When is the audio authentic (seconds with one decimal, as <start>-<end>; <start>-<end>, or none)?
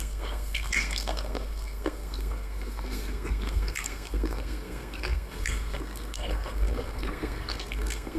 none